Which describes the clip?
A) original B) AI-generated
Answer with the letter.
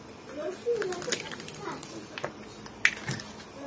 A